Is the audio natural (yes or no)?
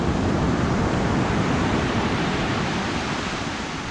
no